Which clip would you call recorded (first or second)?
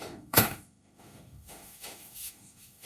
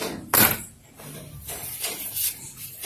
second